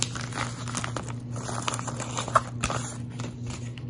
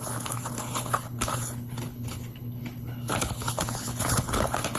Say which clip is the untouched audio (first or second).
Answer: first